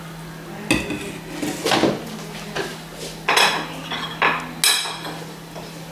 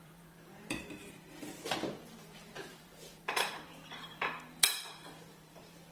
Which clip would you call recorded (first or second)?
first